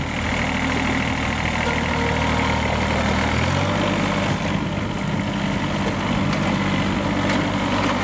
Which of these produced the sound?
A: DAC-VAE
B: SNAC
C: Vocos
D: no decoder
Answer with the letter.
D